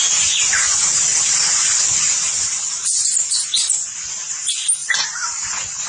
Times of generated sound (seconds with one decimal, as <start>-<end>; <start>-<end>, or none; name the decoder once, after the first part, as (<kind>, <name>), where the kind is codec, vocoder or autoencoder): 4.8-5.5 (vocoder, BigVGAN v2)